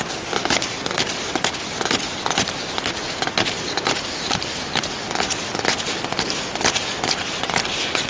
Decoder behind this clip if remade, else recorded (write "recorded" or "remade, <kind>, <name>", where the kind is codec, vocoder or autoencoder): recorded